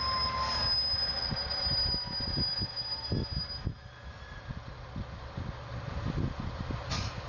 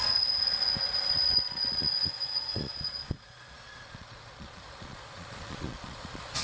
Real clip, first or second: first